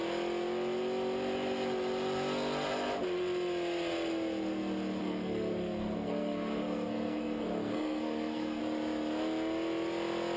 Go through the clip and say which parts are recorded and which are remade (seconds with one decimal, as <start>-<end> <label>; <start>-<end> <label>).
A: 0.0-5.0 recorded; 5.0-8.6 remade; 8.6-10.4 recorded